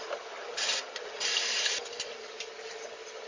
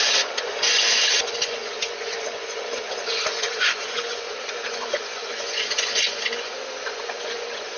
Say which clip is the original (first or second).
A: first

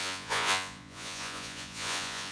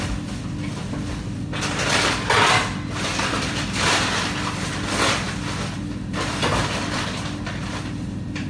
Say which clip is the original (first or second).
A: second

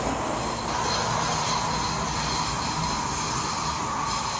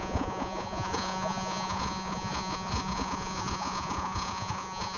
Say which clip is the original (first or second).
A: first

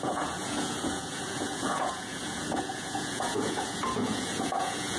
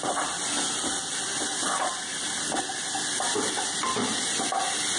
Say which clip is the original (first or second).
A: second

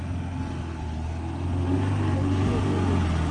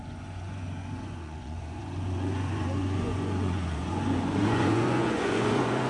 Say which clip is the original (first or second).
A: first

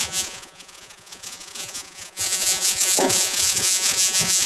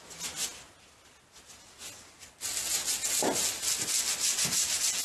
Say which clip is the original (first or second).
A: second